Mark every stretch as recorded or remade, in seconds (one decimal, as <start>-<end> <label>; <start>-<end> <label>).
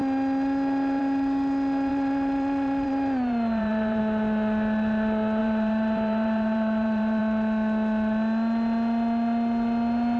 0.0-1.9 recorded; 1.9-4.0 remade; 4.0-5.4 recorded; 5.4-7.2 remade; 7.2-10.2 recorded